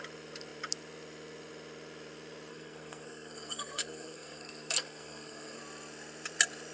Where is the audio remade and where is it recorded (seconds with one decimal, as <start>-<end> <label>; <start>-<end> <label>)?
0.0-2.5 recorded; 2.5-5.6 remade; 5.6-6.7 recorded